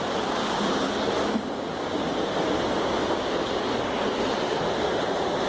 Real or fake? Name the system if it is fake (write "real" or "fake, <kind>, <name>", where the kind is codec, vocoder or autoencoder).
real